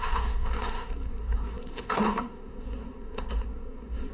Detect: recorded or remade remade